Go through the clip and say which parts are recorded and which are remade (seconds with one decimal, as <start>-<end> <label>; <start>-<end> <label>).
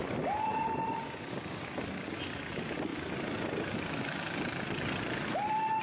0.0-5.8 recorded